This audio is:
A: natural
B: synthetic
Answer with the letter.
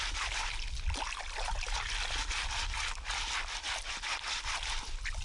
A